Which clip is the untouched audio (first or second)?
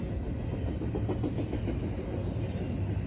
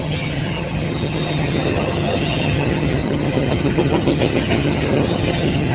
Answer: first